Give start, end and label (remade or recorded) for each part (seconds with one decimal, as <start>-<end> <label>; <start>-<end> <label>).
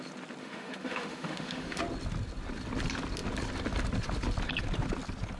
0.0-0.4 recorded; 0.4-1.8 remade; 1.8-5.4 recorded